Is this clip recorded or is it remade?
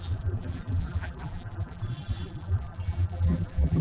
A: remade